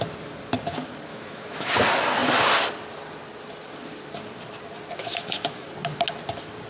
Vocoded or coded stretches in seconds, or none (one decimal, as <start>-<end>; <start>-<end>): 1.1-1.7; 5.0-5.7